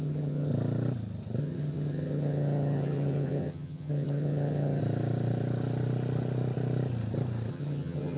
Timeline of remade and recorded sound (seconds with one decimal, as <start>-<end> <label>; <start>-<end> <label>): 0.0-0.5 remade; 0.5-1.4 recorded; 1.4-4.8 remade; 4.8-7.5 recorded; 7.5-8.2 remade